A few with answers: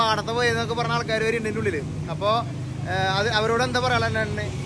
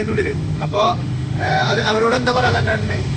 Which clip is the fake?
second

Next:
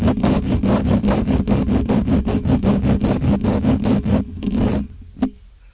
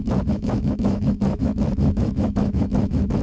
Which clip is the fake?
second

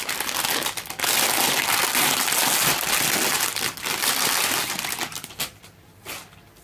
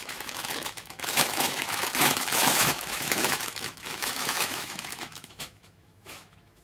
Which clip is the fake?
second